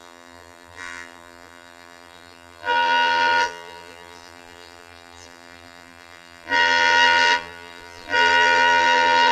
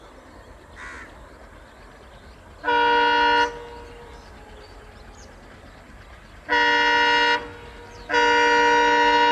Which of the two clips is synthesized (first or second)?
first